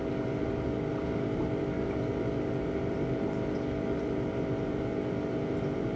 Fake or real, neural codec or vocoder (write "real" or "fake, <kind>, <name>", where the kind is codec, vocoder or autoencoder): fake, vocoder, BigVGAN v2